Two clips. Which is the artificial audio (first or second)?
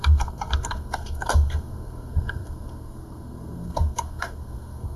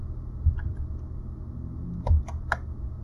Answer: first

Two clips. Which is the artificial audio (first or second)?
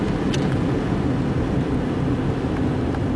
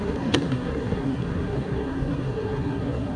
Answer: second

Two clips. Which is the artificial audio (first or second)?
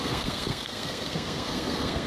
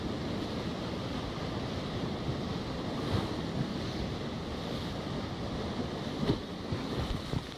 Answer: first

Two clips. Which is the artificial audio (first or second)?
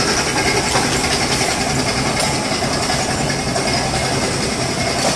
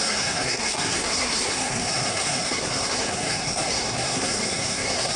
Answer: second